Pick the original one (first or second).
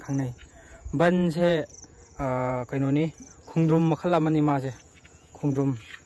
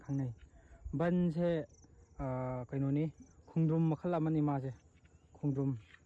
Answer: second